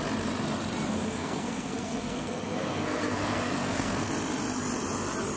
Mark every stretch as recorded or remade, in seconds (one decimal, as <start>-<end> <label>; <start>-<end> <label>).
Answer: 0.0-0.9 recorded; 0.9-4.1 remade; 4.1-5.4 recorded